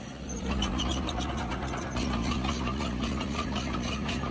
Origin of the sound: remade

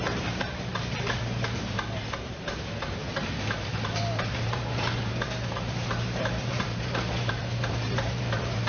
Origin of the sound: remade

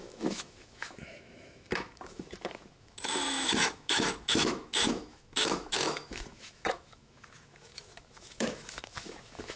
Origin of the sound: remade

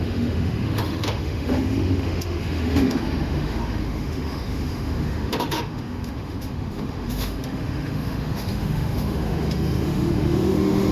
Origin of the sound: remade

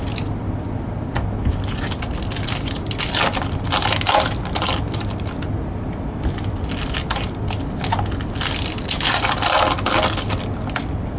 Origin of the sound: recorded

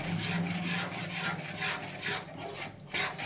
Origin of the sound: recorded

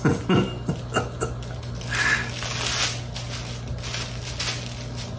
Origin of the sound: recorded